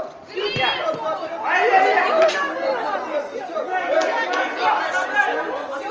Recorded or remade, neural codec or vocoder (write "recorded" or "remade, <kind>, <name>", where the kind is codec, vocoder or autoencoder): recorded